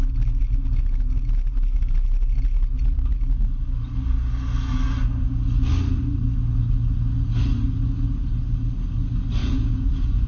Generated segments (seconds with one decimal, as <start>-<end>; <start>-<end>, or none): 9.4-10.3